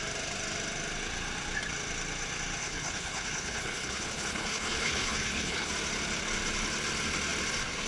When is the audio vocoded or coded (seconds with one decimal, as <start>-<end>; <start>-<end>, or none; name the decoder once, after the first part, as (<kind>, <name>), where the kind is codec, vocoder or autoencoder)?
2.6-5.7 (codec, HILCodec)